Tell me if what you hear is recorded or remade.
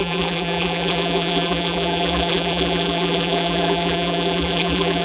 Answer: remade